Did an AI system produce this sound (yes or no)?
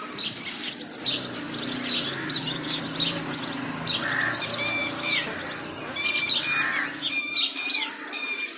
no